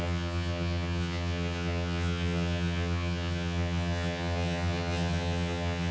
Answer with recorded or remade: remade